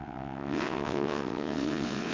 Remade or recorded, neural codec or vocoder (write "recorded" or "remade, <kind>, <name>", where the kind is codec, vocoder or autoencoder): remade, vocoder, WaveNeXt